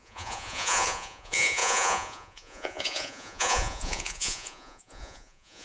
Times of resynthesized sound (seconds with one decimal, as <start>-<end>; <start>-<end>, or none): 0.0-5.6